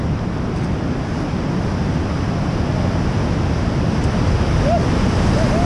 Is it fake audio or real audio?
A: real